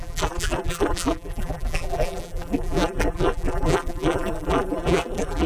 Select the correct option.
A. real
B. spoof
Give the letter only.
B